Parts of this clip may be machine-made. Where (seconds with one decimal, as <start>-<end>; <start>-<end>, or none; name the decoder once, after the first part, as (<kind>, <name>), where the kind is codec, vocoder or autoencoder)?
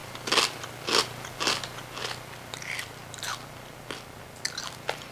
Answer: none